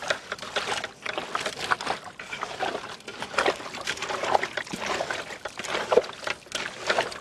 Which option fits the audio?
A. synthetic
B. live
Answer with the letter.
B